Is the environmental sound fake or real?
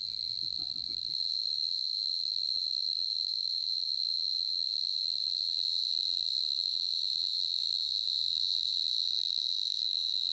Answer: fake